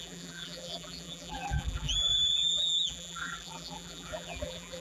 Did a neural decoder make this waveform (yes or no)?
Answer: yes